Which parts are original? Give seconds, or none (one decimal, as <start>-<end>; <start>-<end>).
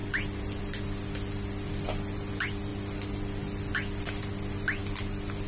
0.0-5.5